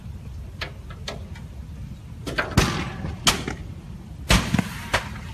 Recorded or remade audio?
recorded